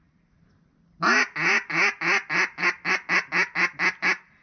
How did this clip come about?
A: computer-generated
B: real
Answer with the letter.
B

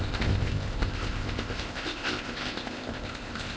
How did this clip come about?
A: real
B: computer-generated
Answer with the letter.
B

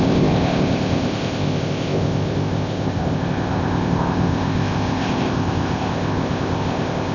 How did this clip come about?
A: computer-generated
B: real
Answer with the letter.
A